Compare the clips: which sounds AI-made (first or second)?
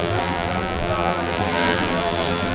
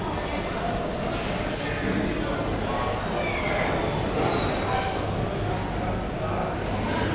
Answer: first